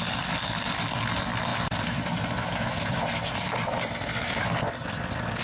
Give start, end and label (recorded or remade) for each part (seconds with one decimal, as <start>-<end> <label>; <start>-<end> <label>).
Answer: 0.0-5.4 recorded